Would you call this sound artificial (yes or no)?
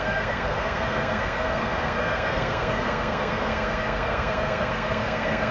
yes